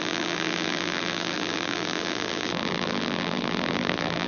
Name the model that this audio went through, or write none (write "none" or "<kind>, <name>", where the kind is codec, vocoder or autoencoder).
vocoder, BigVGAN v2